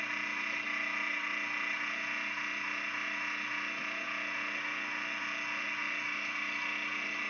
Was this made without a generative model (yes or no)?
yes